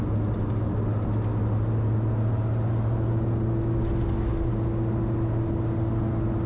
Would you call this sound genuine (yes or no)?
yes